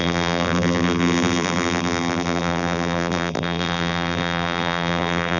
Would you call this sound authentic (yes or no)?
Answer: no